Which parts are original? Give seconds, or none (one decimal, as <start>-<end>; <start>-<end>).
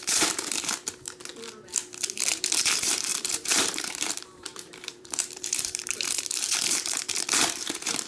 1.3-2.6